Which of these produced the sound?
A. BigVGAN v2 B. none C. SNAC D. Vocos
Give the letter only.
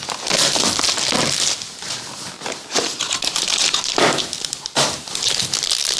B